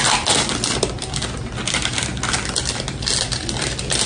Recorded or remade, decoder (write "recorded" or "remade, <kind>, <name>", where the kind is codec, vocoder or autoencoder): recorded